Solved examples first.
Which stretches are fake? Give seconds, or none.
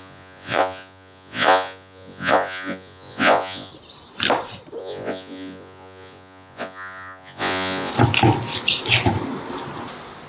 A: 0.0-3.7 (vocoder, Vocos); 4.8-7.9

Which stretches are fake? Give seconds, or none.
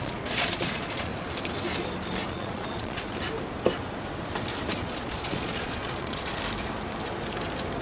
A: 0.0-1.1 (vocoder, Vocos); 2.3-3.1; 4.8-6.3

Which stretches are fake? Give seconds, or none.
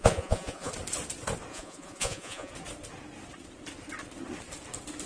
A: 0.0-0.7 (vocoder, Vocos); 1.5-2.5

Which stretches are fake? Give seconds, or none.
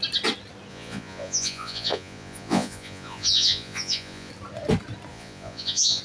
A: 0.7-4.3 (vocoder, Vocos); 5.1-6.0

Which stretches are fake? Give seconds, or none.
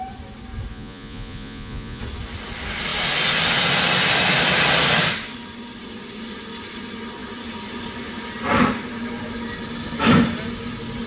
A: 0.7-2.0 (vocoder, Vocos)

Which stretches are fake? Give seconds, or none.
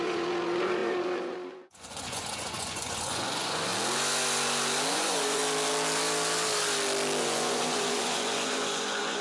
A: 0.0-3.7 (vocoder, Vocos); 4.9-5.4; 7.2-9.2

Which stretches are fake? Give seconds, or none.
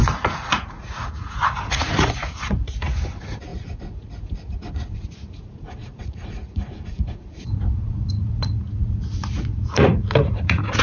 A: 0.0-10.8 (vocoder, Vocos)